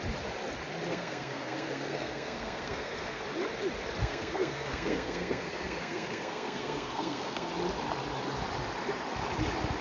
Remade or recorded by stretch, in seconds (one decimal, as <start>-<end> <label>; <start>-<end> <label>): 0.0-0.9 recorded; 0.9-3.2 remade; 3.2-4.0 recorded; 4.0-7.5 remade; 7.5-9.8 recorded